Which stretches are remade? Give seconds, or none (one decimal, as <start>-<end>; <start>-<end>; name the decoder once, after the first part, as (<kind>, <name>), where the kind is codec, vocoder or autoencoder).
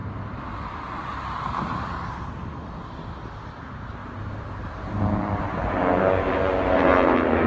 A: 4.0-5.0 (vocoder, BigVGAN v2)